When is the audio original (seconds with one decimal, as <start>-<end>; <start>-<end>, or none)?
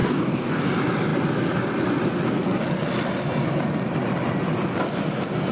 0.6-5.5